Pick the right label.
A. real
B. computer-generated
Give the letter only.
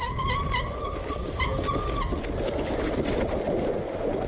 A